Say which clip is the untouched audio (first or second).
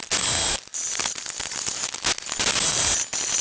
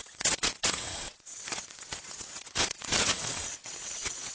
first